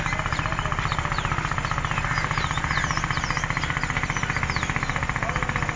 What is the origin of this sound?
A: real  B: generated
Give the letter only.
A